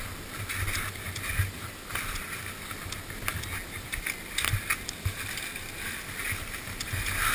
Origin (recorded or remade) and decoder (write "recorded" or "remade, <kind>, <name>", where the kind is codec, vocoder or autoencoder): recorded